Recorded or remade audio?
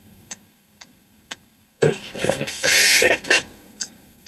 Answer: remade